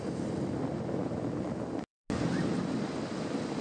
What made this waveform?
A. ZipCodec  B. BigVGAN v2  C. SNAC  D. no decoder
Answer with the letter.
D